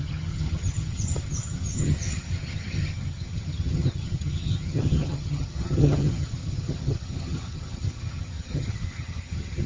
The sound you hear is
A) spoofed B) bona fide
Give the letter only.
A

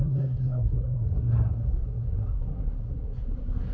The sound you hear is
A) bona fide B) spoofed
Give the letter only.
B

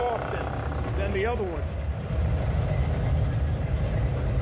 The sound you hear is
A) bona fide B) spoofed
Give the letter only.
A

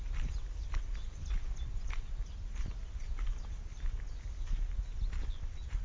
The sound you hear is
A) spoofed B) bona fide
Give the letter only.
B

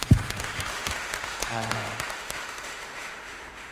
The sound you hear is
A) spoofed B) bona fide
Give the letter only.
A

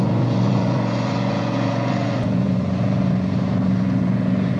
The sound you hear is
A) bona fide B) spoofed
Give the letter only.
B